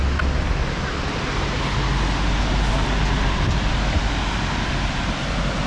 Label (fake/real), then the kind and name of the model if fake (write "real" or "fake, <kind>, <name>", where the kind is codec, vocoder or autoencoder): real